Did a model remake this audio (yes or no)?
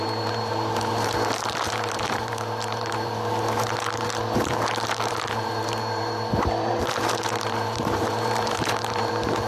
yes